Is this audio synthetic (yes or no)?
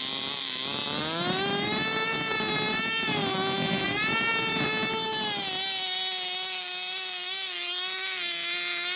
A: no